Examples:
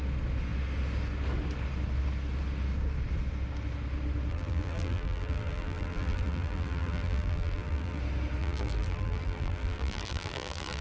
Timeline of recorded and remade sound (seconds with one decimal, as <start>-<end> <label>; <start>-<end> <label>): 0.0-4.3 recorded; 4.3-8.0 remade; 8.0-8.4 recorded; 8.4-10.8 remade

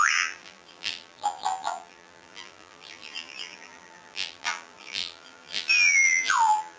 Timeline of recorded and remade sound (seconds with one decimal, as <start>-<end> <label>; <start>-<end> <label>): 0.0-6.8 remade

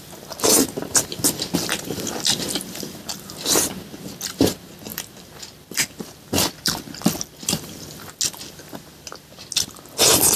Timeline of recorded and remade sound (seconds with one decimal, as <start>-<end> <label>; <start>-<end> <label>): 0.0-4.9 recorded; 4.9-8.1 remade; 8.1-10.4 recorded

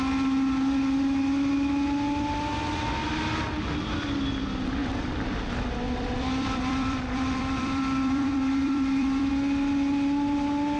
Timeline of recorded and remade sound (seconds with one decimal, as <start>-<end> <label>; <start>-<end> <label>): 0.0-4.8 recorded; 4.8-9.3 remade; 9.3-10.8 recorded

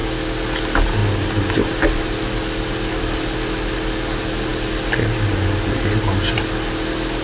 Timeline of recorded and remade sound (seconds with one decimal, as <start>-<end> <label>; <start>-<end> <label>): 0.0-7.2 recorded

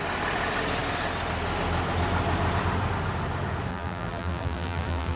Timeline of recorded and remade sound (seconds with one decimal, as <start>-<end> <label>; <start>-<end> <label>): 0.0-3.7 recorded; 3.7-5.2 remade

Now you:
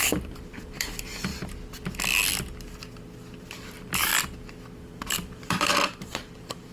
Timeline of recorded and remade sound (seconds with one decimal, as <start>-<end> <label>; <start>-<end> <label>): 0.0-1.3 remade; 1.3-3.4 recorded; 3.4-4.1 remade; 4.1-4.8 recorded; 4.8-6.7 remade

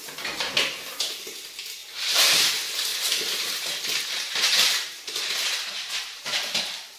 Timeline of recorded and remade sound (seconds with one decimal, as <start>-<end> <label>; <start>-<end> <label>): 0.0-1.8 recorded; 1.8-2.5 remade; 2.5-2.9 recorded; 2.9-6.6 remade; 6.6-7.0 recorded